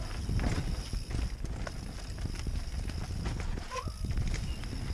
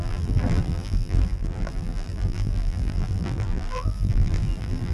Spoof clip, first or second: second